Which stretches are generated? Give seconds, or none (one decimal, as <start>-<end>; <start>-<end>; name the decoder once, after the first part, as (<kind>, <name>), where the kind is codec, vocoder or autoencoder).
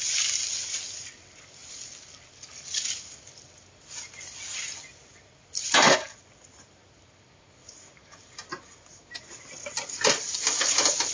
none